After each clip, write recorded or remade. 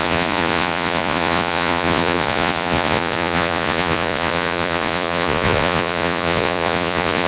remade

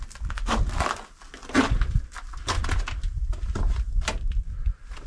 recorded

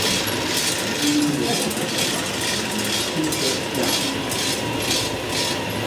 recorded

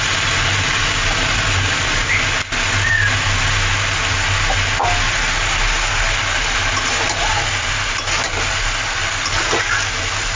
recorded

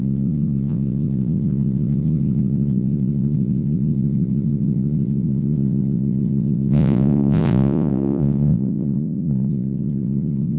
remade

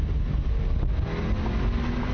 recorded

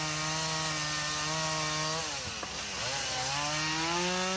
recorded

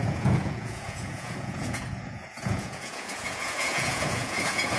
remade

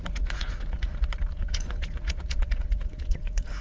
remade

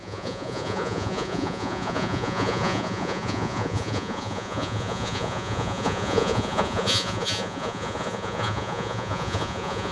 remade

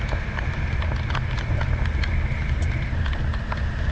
recorded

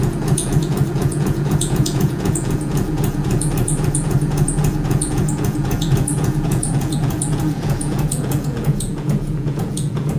remade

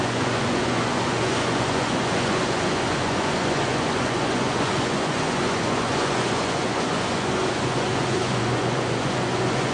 remade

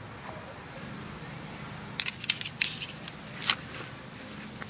recorded